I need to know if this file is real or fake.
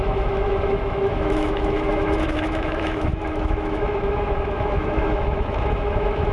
fake